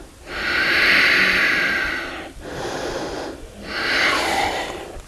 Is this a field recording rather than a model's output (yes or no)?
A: yes